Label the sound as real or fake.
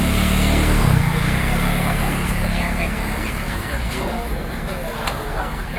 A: fake